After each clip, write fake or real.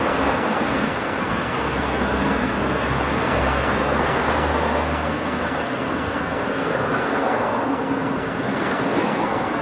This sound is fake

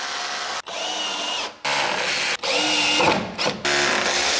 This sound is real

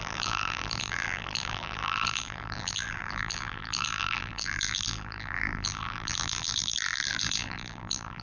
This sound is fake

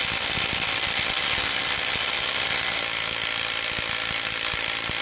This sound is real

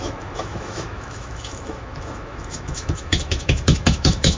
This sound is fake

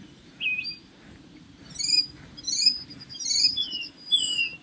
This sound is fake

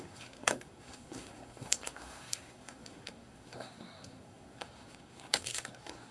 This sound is fake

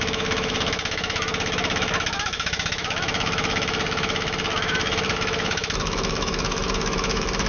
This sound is fake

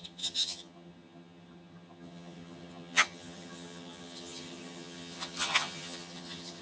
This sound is fake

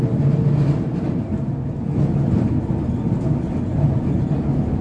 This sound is real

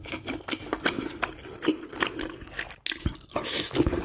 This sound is real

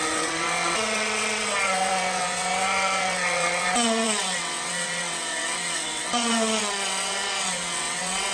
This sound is fake